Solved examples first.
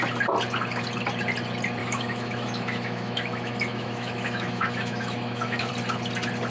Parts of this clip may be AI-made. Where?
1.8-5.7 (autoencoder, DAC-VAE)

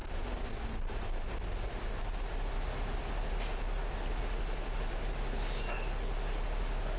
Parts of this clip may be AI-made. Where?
none

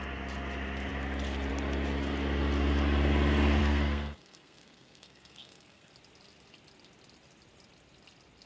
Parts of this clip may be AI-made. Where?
3.6-5.9 (codec, SNAC)

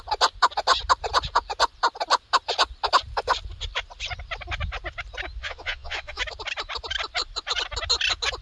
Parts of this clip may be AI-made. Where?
5.4-6.2 (vocoder, Vocos)

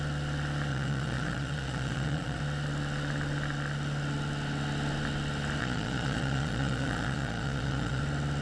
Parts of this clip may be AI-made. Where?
0.7-2.4 (vocoder, Vocos); 5.6-8.0